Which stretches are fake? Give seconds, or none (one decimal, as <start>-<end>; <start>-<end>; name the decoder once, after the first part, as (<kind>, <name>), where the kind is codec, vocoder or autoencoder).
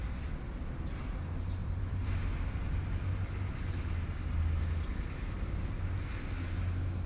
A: 1.6-2.7 (vocoder, BigVGAN v2)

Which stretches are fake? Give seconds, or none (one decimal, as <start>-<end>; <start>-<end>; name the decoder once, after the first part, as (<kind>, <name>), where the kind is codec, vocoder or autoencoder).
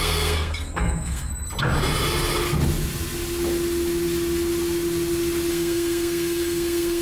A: 0.0-1.3 (codec, SNAC); 5.5-7.0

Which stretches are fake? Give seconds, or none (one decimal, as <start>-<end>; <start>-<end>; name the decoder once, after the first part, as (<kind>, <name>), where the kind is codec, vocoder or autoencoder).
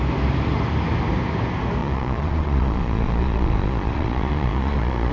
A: 1.8-5.1 (vocoder, Vocos)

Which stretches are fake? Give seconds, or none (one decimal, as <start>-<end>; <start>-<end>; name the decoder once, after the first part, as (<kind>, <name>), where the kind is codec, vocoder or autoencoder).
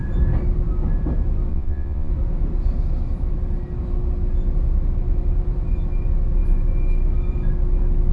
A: 1.5-2.1 (vocoder, Vocos)